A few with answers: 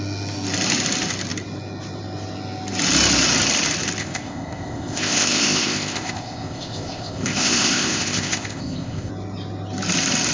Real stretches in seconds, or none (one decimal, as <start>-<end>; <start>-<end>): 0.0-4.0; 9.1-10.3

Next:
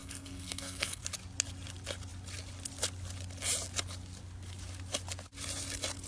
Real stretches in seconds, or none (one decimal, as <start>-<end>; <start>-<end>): 1.0-6.1

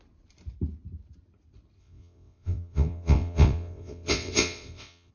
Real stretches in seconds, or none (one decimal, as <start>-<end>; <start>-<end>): 0.0-1.8

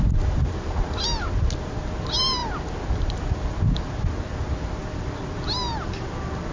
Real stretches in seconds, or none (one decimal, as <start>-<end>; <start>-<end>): 0.0-6.5

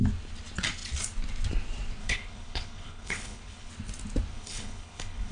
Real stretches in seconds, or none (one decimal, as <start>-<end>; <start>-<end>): 0.0-2.0; 3.7-4.3

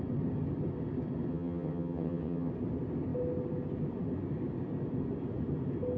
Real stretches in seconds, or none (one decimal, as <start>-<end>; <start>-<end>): 0.0-1.3; 2.5-6.0

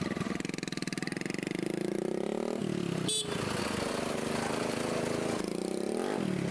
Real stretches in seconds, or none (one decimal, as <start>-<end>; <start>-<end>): 0.0-6.5